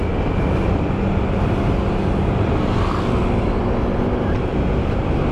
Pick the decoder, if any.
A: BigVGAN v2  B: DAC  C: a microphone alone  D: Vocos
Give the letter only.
C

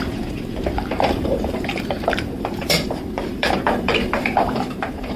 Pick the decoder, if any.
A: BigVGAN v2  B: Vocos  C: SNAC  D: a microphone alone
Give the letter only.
A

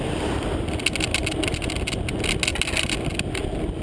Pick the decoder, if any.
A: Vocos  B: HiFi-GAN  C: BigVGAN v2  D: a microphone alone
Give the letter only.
D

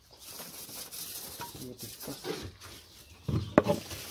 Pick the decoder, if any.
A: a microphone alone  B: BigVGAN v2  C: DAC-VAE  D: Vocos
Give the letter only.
A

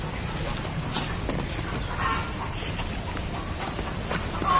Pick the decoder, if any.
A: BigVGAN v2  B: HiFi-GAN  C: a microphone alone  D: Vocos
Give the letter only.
A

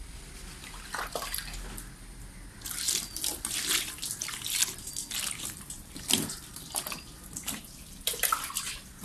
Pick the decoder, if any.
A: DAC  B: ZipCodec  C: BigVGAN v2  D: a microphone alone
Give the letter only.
D